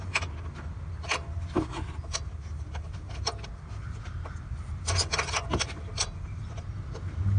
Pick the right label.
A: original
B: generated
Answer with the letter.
A